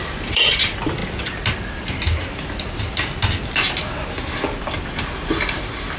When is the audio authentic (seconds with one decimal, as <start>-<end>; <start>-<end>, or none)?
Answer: 1.0-4.6